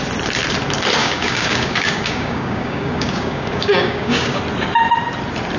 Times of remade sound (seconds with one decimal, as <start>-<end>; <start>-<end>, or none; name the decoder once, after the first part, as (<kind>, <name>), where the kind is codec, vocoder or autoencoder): 1.0-4.4 (codec, DAC)